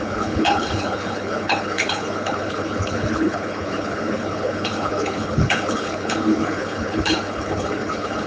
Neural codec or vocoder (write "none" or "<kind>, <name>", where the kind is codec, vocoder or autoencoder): codec, HILCodec